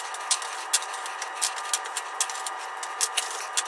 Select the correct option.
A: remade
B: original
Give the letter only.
B